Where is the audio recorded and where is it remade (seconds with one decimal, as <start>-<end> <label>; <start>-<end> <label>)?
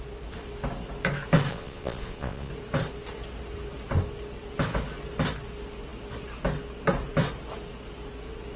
0.0-1.5 recorded; 1.5-2.5 remade; 2.5-8.6 recorded